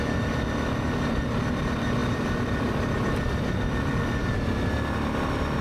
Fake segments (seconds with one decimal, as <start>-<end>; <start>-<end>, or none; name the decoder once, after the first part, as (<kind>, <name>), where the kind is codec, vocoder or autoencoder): 2.0-4.0 (vocoder, BigVGAN v2)